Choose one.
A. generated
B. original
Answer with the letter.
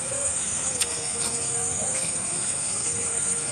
A